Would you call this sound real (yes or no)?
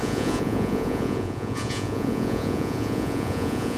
no